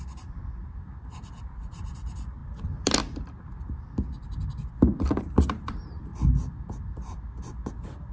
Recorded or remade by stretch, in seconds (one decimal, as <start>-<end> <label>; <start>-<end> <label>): 0.0-0.4 remade; 0.4-1.4 recorded; 1.4-2.4 remade; 2.4-5.2 recorded; 5.2-6.1 remade; 6.1-8.1 recorded

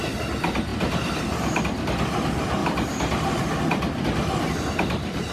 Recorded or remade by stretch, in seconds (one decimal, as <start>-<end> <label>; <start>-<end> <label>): 0.0-0.7 recorded; 0.7-1.6 remade; 1.6-2.6 recorded; 2.6-3.6 remade; 3.6-5.3 recorded

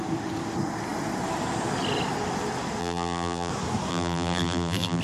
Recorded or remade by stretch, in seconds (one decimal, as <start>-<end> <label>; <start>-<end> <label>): 0.0-2.8 recorded; 2.8-3.5 remade; 3.5-3.9 recorded; 3.9-5.0 remade

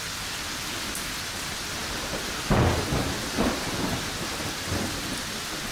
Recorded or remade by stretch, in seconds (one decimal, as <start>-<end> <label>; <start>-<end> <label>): 0.0-5.7 recorded

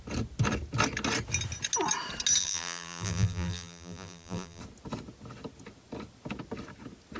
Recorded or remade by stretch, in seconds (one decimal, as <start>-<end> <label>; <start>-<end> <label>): 0.0-2.4 recorded; 2.4-4.6 remade; 4.6-7.2 recorded

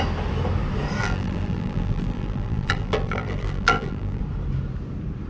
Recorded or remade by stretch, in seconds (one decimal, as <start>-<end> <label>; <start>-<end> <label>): 0.0-1.0 recorded; 1.0-4.2 remade; 4.2-5.3 recorded